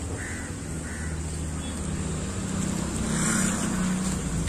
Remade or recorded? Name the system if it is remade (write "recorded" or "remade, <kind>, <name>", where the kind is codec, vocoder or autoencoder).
recorded